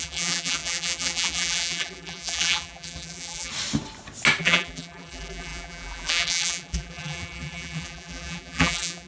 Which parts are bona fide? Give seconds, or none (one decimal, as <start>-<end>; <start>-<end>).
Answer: 3.5-4.4